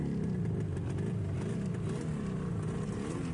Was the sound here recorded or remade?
recorded